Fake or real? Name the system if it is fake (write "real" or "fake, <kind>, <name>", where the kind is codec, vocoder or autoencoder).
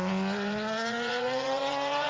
fake, vocoder, Vocos